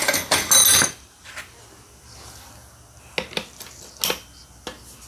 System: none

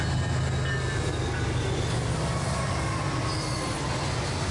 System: none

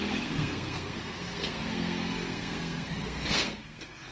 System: codec, SNAC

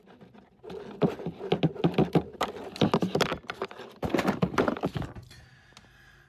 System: none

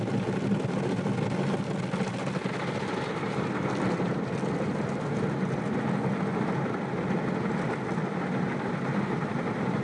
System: none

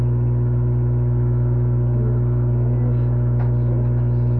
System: none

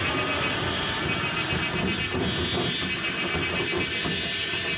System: none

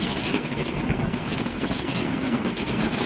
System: codec, SNAC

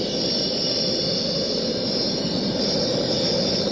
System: none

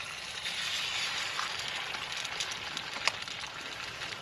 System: none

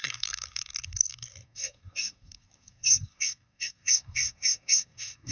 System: codec, SNAC